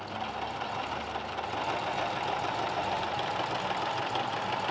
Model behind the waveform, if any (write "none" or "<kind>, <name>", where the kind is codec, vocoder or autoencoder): none